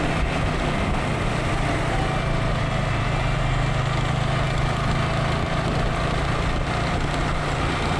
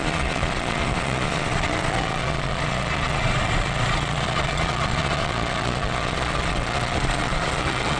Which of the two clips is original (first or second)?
first